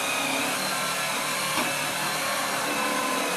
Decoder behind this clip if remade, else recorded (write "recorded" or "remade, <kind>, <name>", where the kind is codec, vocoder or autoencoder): recorded